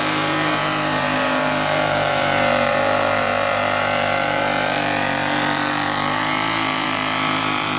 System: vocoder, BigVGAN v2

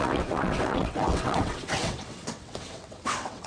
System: vocoder, WaveNeXt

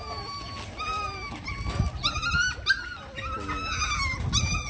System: none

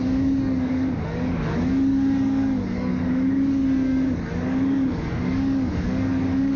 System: codec, DAC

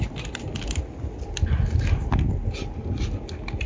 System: none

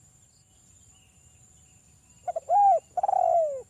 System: none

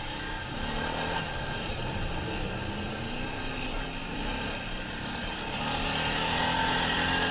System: none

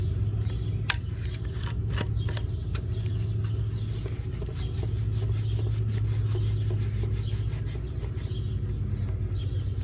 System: none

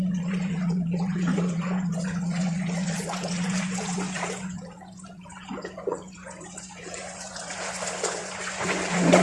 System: vocoder, Vocos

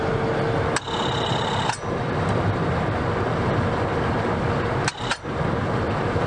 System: none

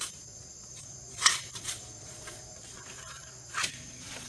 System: vocoder, Vocos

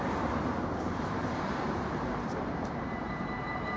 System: vocoder, BigVGAN v2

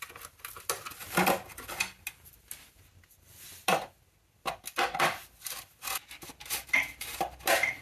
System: none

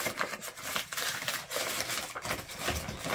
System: none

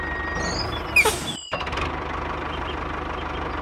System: none